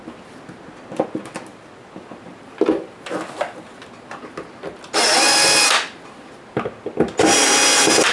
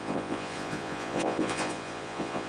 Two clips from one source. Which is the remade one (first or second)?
second